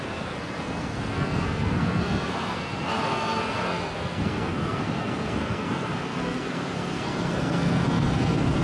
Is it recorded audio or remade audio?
remade